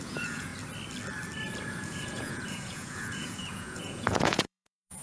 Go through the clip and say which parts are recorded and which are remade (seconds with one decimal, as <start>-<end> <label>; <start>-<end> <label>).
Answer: 0.0-0.5 remade; 0.5-1.7 recorded; 1.7-5.0 remade